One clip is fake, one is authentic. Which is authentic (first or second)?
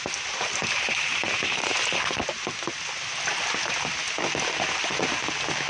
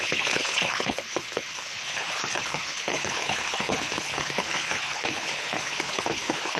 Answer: first